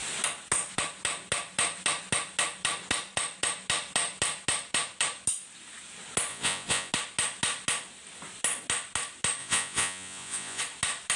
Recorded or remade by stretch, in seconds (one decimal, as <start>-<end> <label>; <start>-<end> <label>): 0.0-6.3 recorded; 6.3-6.9 remade; 6.9-9.4 recorded; 9.4-10.6 remade; 10.6-11.2 recorded